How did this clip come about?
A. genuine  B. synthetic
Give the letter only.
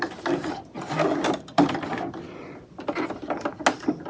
A